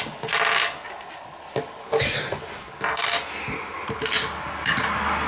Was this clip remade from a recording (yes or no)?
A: no